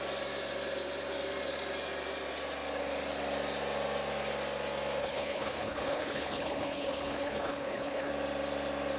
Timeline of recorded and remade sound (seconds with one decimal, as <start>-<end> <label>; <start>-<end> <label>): 0.0-5.0 recorded; 5.0-8.1 remade; 8.1-9.0 recorded

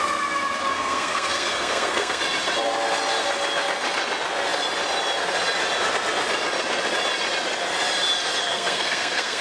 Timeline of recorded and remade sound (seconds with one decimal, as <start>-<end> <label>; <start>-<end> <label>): 0.0-0.7 recorded; 0.7-2.2 remade; 2.2-8.5 recorded; 8.5-9.4 remade

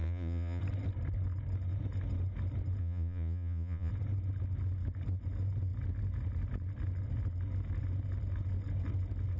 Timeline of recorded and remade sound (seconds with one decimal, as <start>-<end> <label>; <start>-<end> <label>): 0.0-0.6 remade; 0.6-2.8 recorded; 2.8-3.9 remade; 3.9-9.4 recorded

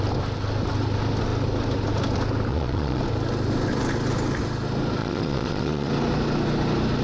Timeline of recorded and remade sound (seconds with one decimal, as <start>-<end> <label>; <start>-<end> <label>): 0.0-2.5 recorded; 2.5-3.0 remade; 3.0-5.0 recorded; 5.0-5.9 remade; 5.9-7.0 recorded

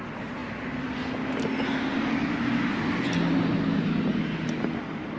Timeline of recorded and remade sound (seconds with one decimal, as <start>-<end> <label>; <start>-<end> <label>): 0.0-5.2 recorded

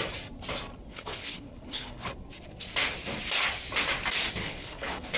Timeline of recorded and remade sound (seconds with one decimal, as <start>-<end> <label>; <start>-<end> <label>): 0.0-0.9 recorded; 0.9-2.1 remade; 2.1-4.4 recorded; 4.4-5.2 remade

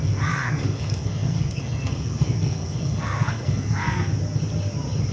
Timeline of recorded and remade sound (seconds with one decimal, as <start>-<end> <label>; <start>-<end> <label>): 0.0-4.1 remade; 4.1-5.1 recorded